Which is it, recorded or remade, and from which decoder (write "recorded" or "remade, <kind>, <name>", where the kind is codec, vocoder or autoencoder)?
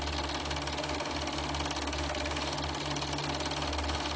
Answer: recorded